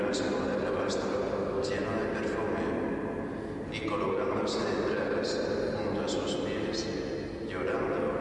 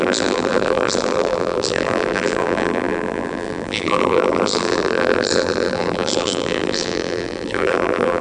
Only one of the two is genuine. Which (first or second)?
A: first